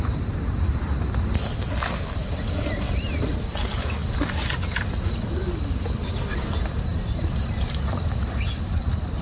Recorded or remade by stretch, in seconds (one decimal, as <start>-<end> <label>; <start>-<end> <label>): 0.0-2.2 recorded; 2.2-3.3 remade; 3.3-6.9 recorded; 6.9-9.2 remade